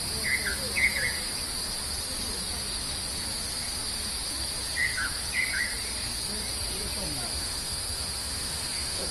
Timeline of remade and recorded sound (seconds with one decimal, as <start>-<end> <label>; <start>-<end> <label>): 0.0-7.3 recorded; 7.3-9.1 remade